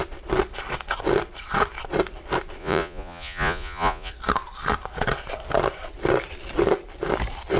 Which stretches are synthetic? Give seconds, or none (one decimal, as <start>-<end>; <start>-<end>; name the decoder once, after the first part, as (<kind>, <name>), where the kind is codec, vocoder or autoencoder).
2.6-4.1 (vocoder, Vocos)